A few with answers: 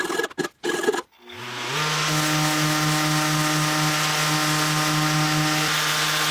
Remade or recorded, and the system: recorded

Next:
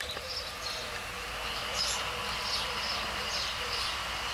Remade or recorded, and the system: recorded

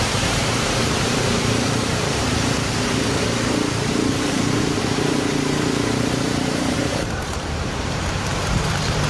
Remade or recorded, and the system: remade, vocoder, BigVGAN v2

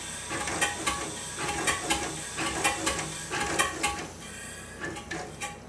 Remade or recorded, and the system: recorded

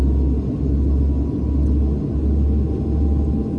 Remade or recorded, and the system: recorded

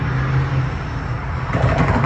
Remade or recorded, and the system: recorded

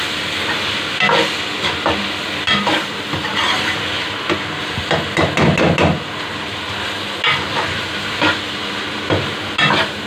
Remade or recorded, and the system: recorded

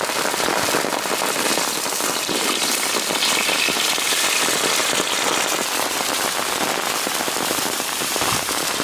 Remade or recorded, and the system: remade, vocoder, BigVGAN v2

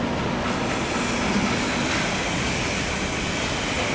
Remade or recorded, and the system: recorded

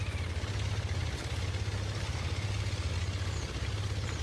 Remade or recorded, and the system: recorded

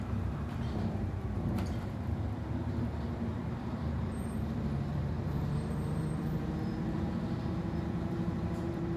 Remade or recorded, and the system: remade, vocoder, BigVGAN v2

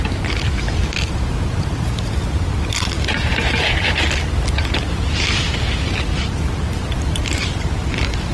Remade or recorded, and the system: recorded